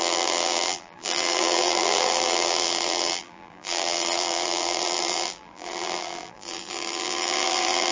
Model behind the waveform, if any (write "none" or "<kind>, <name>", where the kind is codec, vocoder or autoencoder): vocoder, BigVGAN v2